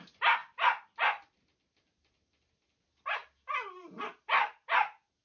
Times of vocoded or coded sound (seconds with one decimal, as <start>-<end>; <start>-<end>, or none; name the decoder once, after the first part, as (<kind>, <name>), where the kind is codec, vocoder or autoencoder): none